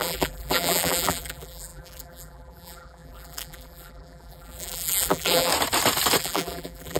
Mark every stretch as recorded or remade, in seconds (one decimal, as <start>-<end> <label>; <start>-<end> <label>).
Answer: 0.0-5.5 remade; 5.5-6.2 recorded; 6.2-7.0 remade